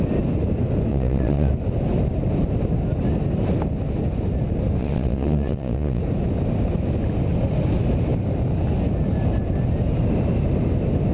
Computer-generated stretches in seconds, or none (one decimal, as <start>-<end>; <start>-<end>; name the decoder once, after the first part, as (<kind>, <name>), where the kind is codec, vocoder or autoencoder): 0.9-1.5 (vocoder, Vocos); 4.8-6.0